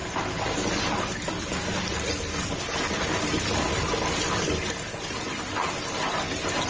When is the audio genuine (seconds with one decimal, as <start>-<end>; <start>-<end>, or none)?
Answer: 0.0-6.7